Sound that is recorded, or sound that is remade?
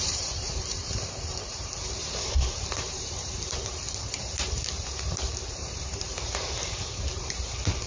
remade